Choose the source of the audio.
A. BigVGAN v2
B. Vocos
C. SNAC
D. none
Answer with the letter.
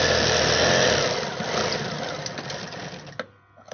D